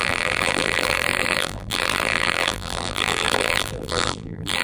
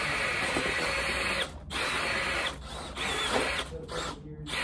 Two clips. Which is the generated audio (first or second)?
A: first